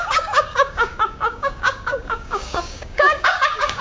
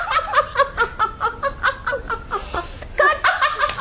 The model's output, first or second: first